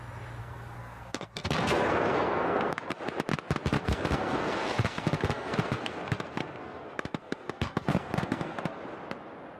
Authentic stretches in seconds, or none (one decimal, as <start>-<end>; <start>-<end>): 0.0-0.4; 3.0-3.7; 8.8-9.6